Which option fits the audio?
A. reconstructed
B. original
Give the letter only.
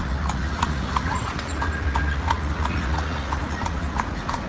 A